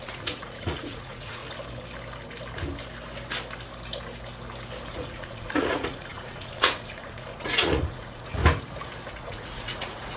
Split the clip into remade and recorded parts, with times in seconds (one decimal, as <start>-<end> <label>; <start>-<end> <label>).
0.0-1.4 remade; 1.4-4.9 recorded; 4.9-8.4 remade; 8.4-9.1 recorded; 9.1-10.2 remade